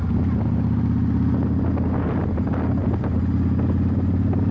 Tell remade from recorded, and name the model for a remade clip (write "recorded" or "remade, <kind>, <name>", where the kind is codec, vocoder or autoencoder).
recorded